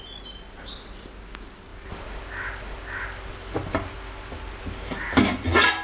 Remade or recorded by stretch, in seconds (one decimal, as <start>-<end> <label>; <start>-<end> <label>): 0.0-5.8 recorded